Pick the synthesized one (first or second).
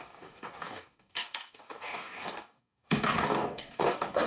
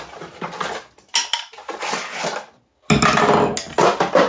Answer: first